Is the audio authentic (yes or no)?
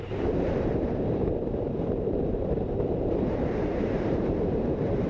no